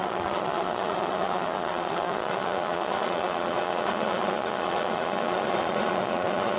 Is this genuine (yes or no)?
no